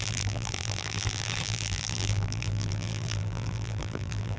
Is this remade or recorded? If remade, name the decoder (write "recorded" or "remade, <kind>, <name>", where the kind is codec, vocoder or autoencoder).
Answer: remade, vocoder, BigVGAN v2